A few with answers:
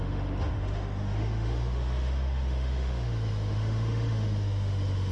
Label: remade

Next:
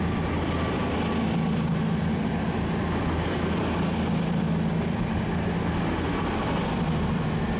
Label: recorded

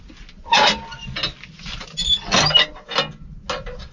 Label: recorded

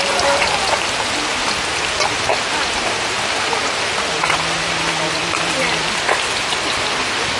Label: recorded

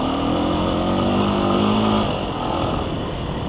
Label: recorded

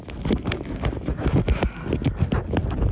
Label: recorded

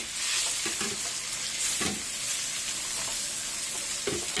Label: recorded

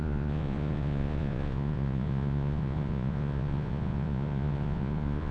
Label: remade